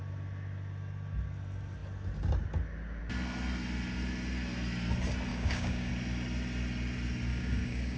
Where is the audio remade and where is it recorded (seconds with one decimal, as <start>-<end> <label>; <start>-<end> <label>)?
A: 0.0-5.3 recorded; 5.3-5.9 remade; 5.9-7.3 recorded; 7.3-8.0 remade